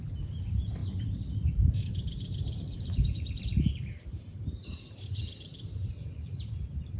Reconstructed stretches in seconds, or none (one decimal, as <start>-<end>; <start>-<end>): 0.0-7.0